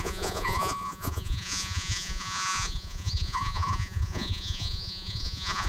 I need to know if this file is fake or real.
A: fake